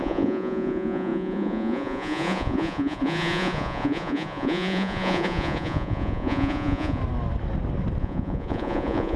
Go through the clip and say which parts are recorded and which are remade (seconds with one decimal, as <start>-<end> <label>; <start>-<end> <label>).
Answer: 0.0-7.0 remade; 7.0-8.0 recorded; 8.0-9.2 remade